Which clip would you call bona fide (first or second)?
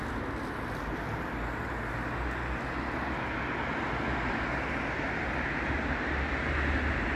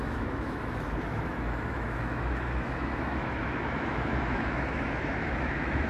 first